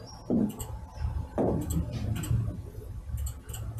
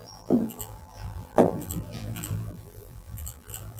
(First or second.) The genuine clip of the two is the first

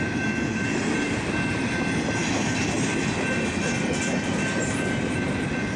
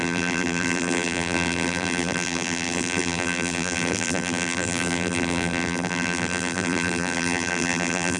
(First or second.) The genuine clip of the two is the first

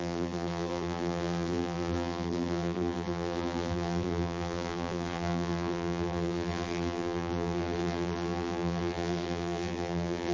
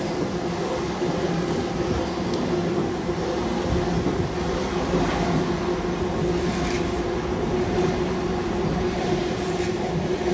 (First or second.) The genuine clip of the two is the second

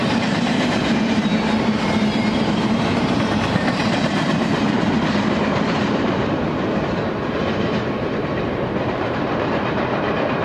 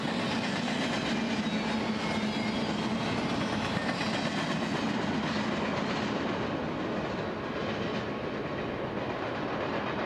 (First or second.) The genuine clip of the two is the second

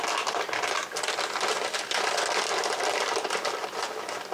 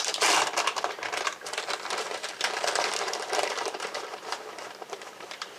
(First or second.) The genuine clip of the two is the first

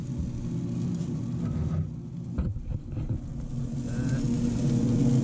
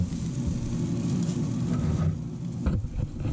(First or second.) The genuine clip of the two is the first